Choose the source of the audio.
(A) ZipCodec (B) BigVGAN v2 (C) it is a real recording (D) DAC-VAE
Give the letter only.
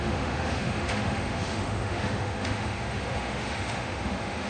D